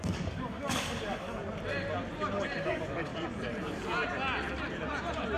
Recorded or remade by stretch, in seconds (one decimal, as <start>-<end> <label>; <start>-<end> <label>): 0.0-1.4 remade; 1.4-2.6 recorded; 2.6-3.1 remade; 3.1-5.4 recorded